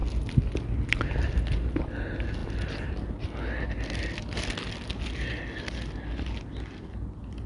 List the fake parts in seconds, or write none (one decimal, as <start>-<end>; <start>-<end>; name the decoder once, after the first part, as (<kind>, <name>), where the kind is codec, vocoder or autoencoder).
none